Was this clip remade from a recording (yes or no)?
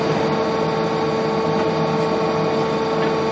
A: no